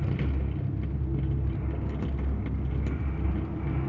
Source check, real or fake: real